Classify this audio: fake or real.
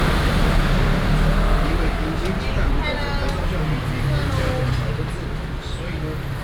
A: real